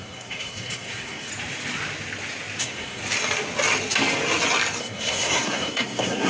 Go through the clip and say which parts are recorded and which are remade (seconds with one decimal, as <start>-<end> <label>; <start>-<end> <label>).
0.0-1.3 remade; 1.3-2.6 recorded; 2.6-3.0 remade; 3.0-4.8 recorded; 4.8-6.3 remade